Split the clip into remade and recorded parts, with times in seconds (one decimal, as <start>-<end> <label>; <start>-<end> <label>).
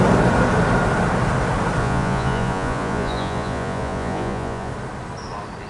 0.0-1.8 recorded; 1.8-4.7 remade; 4.7-5.7 recorded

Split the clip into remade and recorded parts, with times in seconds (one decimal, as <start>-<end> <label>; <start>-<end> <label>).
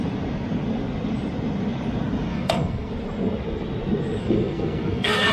0.0-2.3 recorded; 2.3-2.9 remade; 2.9-4.2 recorded; 4.2-5.3 remade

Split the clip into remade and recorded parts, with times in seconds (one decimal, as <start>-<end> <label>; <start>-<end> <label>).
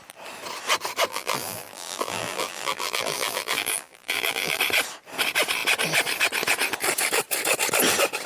0.0-1.1 recorded; 1.1-4.6 remade; 4.6-8.3 recorded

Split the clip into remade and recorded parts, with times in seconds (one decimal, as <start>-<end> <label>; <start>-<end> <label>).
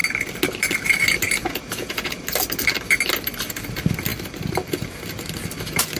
0.0-1.4 recorded; 1.4-2.2 remade; 2.2-6.0 recorded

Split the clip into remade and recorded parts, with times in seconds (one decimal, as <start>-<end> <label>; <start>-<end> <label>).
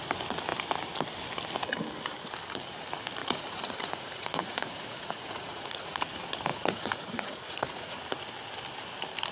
0.0-3.2 recorded; 3.2-6.0 remade; 6.0-6.5 recorded; 6.5-8.0 remade; 8.0-9.3 recorded